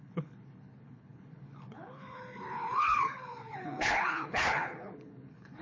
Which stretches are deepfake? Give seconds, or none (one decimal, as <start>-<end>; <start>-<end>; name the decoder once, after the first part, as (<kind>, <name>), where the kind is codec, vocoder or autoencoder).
0.0-5.6 (codec, HILCodec)

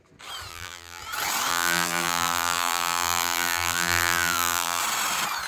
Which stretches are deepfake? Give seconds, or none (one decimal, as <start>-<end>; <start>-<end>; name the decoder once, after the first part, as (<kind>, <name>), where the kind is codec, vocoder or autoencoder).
0.5-1.0 (vocoder, BigVGAN v2); 1.5-4.8

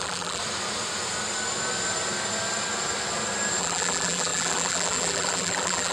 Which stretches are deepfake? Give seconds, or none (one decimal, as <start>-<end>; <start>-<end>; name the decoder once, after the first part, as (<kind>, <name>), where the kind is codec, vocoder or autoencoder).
0.0-0.4 (vocoder, BigVGAN v2); 3.6-5.9

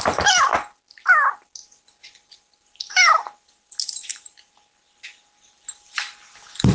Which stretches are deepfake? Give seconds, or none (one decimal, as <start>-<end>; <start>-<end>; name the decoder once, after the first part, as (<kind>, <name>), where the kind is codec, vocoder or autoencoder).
none

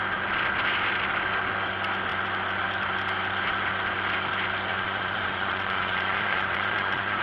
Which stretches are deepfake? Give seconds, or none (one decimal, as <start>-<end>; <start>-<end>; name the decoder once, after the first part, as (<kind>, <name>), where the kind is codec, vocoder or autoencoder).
4.7-7.2 (vocoder, Vocos)